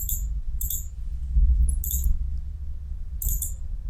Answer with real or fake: real